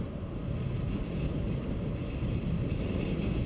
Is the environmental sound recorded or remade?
recorded